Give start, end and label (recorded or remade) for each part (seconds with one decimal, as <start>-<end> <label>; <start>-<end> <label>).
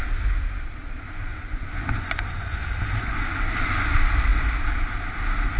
0.0-1.3 recorded; 1.3-2.6 remade; 2.6-5.6 recorded